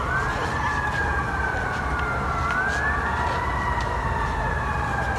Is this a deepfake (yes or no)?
no